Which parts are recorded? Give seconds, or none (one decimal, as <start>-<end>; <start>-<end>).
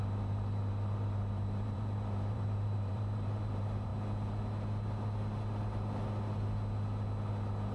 3.9-7.7